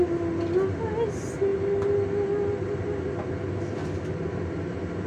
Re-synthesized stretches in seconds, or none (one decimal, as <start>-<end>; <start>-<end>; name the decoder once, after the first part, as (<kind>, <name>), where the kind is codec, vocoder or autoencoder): none